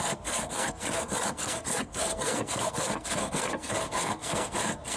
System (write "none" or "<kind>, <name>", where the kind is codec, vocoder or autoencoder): codec, SNAC